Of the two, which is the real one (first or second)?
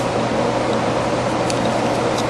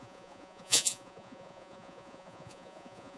first